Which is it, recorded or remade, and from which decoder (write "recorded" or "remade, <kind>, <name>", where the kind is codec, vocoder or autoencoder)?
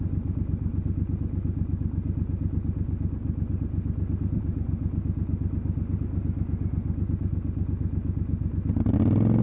recorded